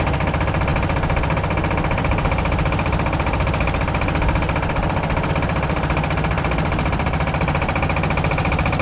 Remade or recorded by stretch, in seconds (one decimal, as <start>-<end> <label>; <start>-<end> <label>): 0.0-8.8 recorded